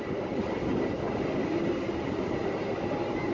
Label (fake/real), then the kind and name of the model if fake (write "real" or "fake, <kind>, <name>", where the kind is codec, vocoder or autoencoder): real